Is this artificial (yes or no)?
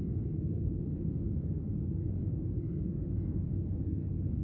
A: yes